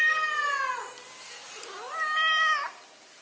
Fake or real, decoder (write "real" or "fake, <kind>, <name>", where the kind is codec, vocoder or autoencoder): real